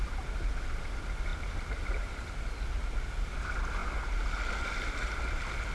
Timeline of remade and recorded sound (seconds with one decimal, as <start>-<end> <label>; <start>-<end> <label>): 0.0-5.7 recorded